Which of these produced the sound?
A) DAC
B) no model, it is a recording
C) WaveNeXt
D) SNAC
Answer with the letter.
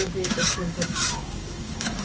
A